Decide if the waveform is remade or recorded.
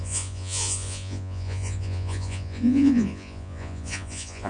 remade